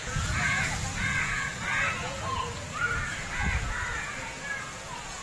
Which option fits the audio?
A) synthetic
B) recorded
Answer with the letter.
A